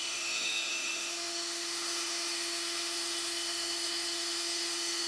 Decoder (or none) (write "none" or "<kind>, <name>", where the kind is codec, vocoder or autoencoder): autoencoder, DAC-VAE